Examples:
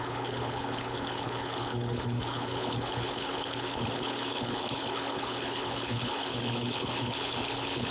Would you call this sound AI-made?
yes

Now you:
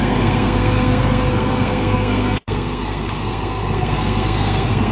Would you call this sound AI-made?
yes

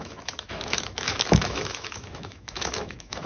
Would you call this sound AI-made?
yes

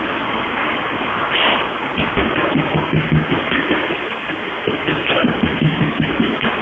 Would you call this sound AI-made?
yes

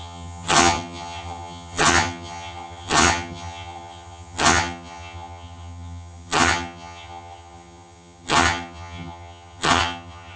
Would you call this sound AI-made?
yes